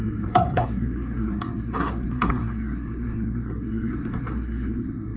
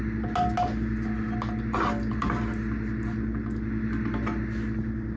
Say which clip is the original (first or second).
second